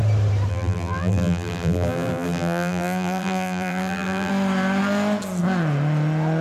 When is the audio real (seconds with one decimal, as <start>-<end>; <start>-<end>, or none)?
0.0-0.5; 4.3-6.4